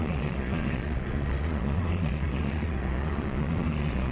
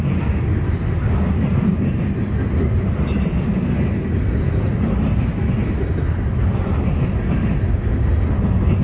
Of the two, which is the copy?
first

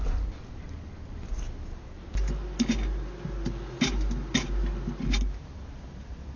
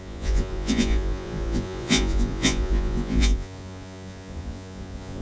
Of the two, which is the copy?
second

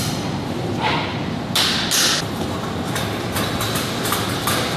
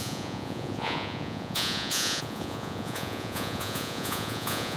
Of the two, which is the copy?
second